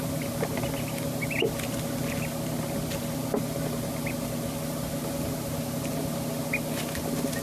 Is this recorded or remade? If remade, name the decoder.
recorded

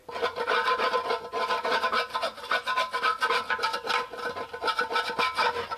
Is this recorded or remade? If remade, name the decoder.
recorded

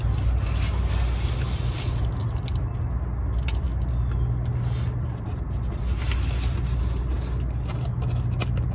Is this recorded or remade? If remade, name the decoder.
recorded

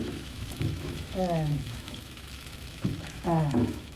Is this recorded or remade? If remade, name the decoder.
remade, autoencoder, DAC-VAE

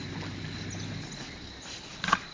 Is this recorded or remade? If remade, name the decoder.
recorded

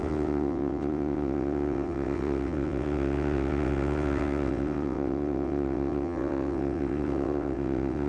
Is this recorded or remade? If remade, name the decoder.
remade, vocoder, WaveNeXt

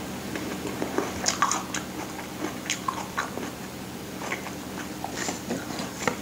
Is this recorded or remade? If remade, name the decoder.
recorded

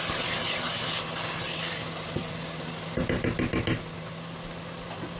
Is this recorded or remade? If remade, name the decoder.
recorded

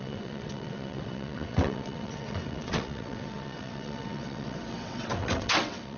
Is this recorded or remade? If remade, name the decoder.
remade, vocoder, WaveNeXt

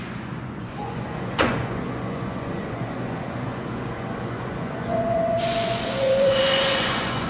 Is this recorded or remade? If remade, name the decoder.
remade, vocoder, Vocos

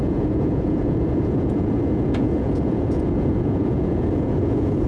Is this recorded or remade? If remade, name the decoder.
remade, vocoder, Vocos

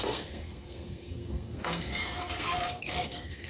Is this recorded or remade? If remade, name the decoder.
remade, codec, SNAC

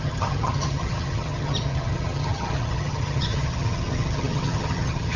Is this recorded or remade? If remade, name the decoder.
remade, vocoder, HiFi-GAN